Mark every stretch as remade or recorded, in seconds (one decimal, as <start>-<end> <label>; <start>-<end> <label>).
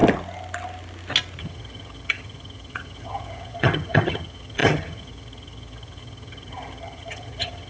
0.0-1.4 recorded; 1.4-7.7 remade